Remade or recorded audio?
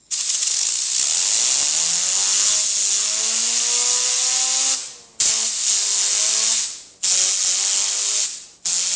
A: recorded